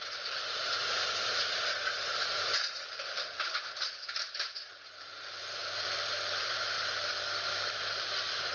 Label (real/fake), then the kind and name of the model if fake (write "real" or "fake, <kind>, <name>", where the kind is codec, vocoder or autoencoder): fake, vocoder, BigVGAN v2